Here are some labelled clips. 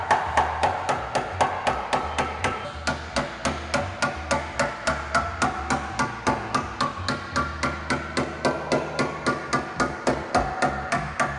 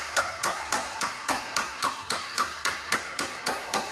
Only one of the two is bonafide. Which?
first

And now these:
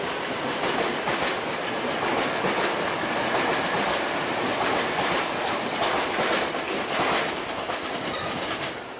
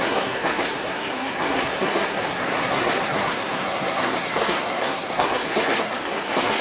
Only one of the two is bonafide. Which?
first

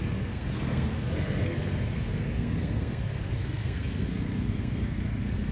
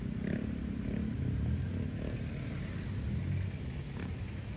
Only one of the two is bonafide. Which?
second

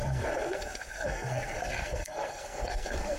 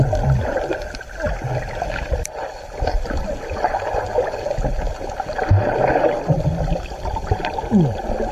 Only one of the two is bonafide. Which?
second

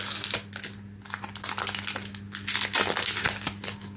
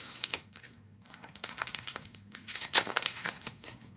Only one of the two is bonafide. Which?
first